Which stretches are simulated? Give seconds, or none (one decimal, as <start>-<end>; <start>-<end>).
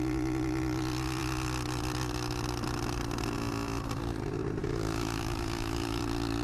4.6-6.0